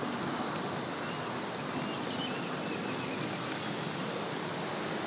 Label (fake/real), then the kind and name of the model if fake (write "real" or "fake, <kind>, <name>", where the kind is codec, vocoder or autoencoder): real